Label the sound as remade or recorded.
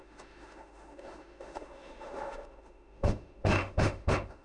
remade